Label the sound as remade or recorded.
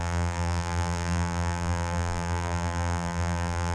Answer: remade